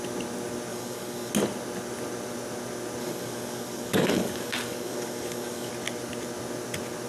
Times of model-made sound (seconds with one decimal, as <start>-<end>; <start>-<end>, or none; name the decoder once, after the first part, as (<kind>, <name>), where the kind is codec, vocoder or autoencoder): 0.7-1.3 (codec, DAC); 3.0-5.7

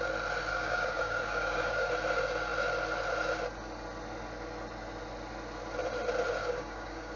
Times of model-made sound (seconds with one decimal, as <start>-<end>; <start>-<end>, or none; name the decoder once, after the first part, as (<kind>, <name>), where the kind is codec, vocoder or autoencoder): 0.5-1.9 (codec, DAC); 6.4-7.2